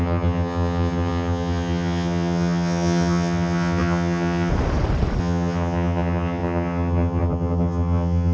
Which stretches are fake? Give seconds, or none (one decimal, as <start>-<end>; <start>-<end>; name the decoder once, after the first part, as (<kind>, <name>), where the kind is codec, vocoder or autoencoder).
0.0-4.5 (vocoder, HiFi-GAN); 5.2-8.3